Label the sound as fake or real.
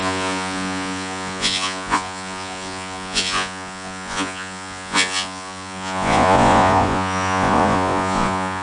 fake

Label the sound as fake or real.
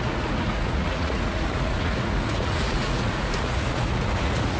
fake